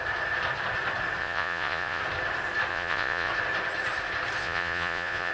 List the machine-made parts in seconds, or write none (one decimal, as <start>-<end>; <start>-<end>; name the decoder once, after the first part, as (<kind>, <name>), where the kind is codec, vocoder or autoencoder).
1.2-2.0 (vocoder, Vocos); 2.7-3.3; 4.4-5.3